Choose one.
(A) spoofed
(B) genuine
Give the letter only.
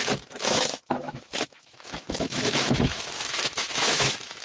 A